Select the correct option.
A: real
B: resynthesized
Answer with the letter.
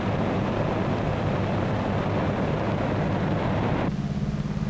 A